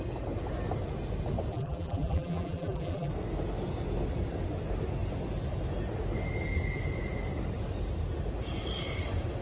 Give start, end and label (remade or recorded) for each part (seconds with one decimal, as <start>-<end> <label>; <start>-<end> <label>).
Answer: 0.0-1.5 recorded; 1.5-3.1 remade; 3.1-9.4 recorded